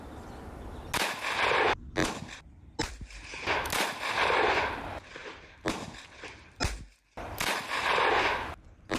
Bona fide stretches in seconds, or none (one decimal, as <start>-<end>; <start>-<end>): 0.0-9.0